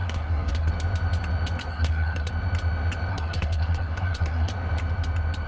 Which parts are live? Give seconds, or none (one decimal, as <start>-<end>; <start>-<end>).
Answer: 0.7-1.7; 2.3-3.1; 4.5-5.5